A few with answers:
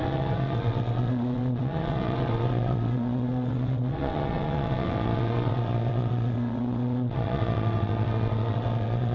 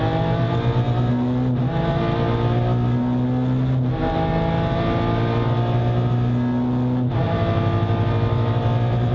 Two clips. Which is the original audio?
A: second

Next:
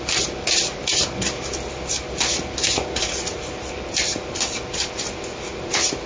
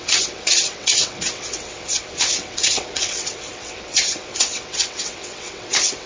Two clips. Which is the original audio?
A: first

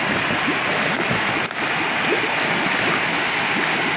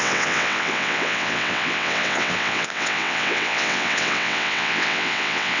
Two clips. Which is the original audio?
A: first